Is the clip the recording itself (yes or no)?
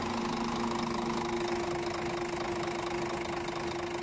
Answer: yes